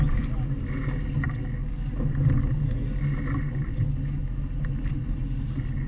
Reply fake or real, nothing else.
real